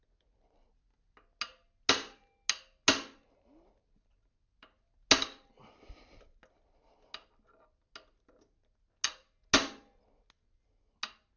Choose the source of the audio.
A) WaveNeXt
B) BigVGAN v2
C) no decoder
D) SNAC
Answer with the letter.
C